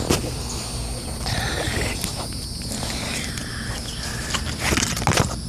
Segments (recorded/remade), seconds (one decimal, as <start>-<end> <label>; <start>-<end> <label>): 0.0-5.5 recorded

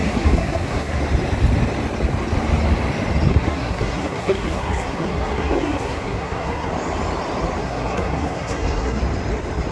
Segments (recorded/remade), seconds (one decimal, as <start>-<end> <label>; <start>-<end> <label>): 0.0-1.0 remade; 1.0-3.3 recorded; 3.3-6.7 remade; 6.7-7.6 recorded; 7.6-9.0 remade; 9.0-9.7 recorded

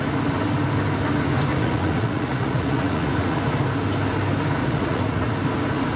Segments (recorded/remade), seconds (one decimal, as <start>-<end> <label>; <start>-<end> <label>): 0.0-1.5 recorded; 1.5-3.4 remade; 3.4-4.6 recorded; 4.6-5.3 remade; 5.3-6.0 recorded

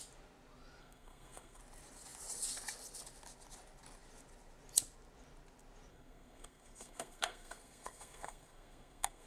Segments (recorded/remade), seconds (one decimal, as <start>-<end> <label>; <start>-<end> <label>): 0.0-0.8 recorded; 0.8-1.6 remade; 1.6-5.9 recorded; 5.9-9.3 remade